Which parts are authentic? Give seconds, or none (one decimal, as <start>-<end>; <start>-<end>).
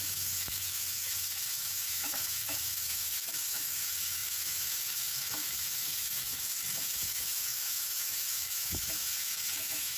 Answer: none